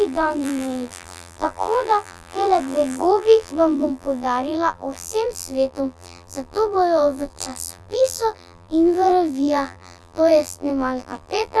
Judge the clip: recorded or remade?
remade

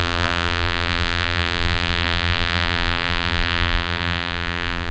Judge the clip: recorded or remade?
remade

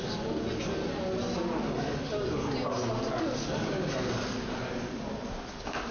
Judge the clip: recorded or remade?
recorded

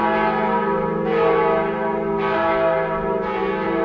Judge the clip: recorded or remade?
recorded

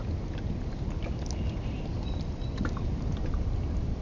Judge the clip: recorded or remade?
recorded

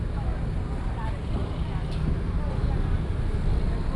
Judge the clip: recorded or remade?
recorded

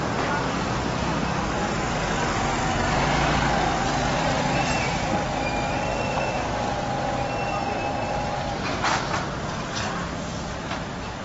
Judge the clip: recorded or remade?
recorded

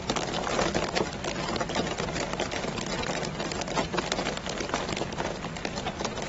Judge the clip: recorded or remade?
remade